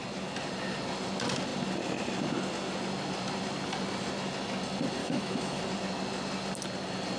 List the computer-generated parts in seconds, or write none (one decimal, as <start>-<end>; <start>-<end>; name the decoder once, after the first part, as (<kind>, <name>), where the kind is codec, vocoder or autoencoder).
5.0-5.6 (autoencoder, DAC-VAE)